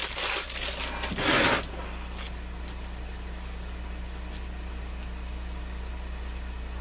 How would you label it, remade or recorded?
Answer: recorded